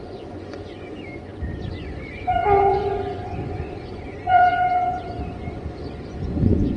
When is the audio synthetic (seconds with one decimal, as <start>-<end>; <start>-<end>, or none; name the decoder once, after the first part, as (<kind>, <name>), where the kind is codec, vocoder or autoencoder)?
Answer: 0.0-6.8 (vocoder, Vocos)